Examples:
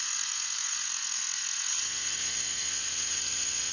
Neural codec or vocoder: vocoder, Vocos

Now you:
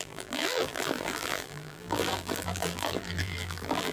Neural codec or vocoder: vocoder, BigVGAN v2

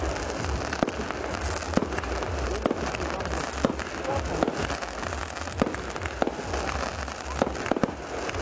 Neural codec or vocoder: none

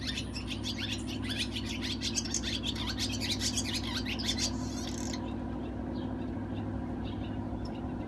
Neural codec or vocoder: none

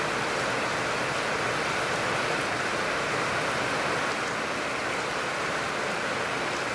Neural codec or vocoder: none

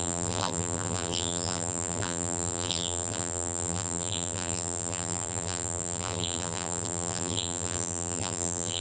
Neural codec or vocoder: vocoder, BigVGAN v2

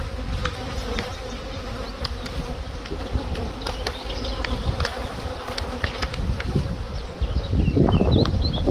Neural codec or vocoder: none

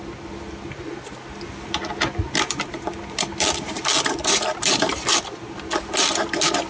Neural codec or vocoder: vocoder, BigVGAN v2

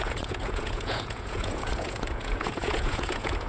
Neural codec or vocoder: vocoder, Vocos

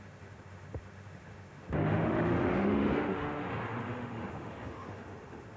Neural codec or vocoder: autoencoder, DAC-VAE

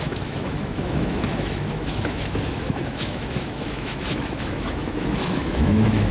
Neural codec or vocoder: autoencoder, DAC-VAE